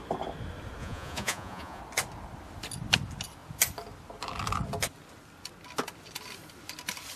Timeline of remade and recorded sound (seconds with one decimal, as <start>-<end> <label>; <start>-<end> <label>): 0.0-0.8 recorded; 0.8-1.8 remade; 1.8-7.2 recorded